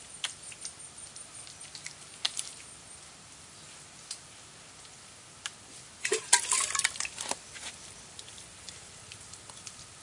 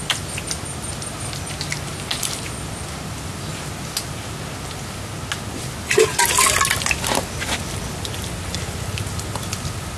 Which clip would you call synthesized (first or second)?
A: first